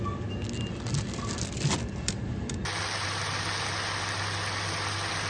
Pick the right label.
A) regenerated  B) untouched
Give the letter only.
B